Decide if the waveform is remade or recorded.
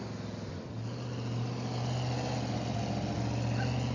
recorded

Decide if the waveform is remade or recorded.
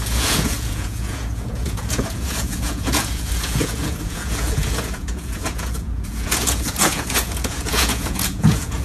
remade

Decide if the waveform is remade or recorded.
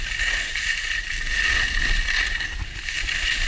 recorded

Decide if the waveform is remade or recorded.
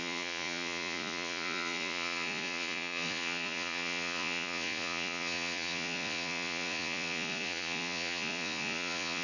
remade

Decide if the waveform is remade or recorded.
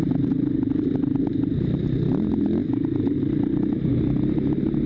recorded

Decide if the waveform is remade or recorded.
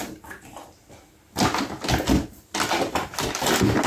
recorded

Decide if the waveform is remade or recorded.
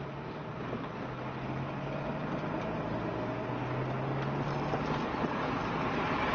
recorded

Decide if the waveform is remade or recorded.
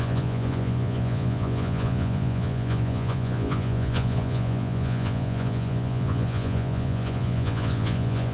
remade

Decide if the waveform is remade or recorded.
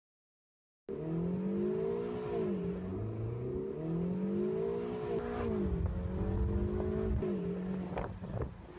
recorded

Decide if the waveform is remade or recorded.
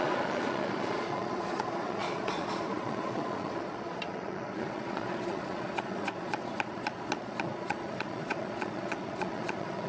remade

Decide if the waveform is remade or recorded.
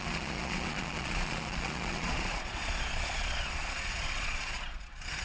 remade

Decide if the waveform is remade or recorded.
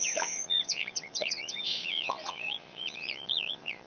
remade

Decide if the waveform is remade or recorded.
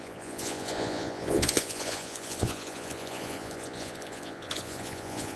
remade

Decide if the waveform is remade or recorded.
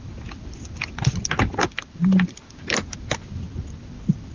recorded